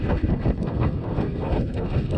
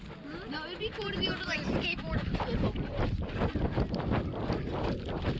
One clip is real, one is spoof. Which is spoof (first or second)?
first